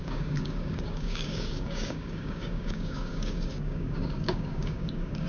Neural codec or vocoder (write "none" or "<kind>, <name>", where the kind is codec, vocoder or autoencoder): codec, DAC